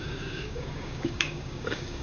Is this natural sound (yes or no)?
no